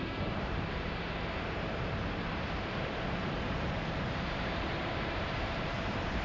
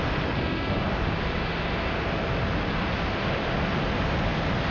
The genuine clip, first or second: second